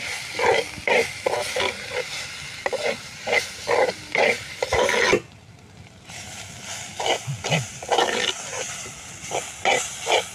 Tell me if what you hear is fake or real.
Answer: real